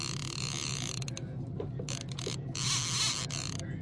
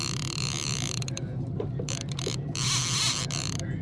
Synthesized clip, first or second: second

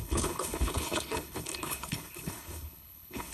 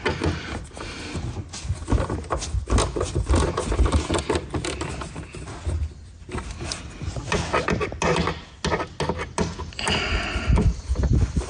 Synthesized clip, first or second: first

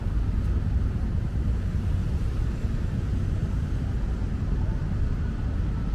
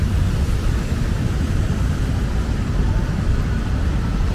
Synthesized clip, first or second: second